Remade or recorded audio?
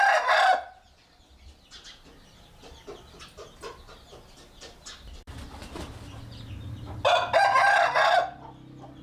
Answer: recorded